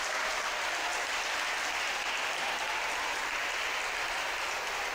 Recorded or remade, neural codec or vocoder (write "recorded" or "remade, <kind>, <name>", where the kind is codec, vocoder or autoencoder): recorded